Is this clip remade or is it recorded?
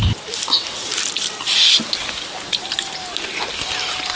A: recorded